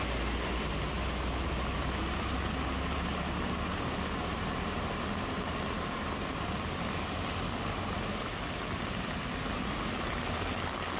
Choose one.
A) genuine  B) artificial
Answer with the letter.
A